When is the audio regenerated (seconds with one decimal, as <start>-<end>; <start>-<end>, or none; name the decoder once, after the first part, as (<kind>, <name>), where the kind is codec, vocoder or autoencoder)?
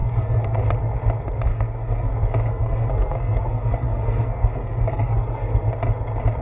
0.0-0.6 (codec, SNAC); 1.5-2.1; 2.5-5.7